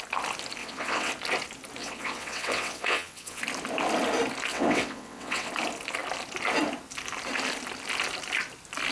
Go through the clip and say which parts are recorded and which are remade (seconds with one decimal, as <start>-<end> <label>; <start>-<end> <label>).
0.0-0.6 recorded; 0.6-1.1 remade; 1.1-1.8 recorded; 1.8-3.4 remade; 3.4-4.5 recorded; 4.5-5.5 remade; 5.5-8.9 recorded